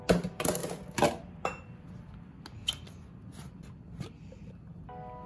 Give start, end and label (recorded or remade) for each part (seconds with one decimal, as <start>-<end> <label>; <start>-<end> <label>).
0.0-5.3 recorded